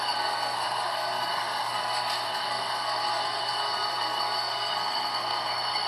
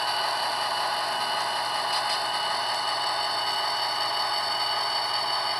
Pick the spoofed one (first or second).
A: first